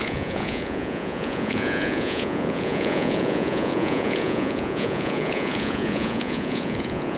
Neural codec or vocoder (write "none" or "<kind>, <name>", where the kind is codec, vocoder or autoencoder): vocoder, Vocos